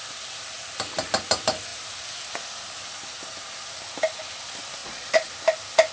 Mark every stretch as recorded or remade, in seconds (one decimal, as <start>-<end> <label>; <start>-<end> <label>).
0.0-4.8 recorded; 4.8-5.3 remade; 5.3-5.9 recorded